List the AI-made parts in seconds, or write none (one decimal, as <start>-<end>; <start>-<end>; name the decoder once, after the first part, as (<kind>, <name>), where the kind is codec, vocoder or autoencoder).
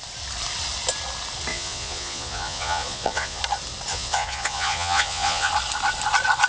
1.5-3.4 (vocoder, Vocos); 3.9-5.5